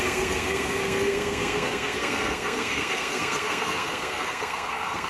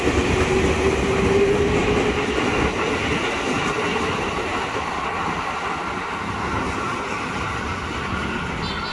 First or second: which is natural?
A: second